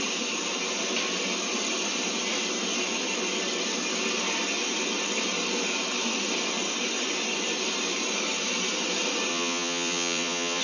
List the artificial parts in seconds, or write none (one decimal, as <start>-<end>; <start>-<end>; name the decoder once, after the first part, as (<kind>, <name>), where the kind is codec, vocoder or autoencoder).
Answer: 9.3-10.6 (vocoder, Vocos)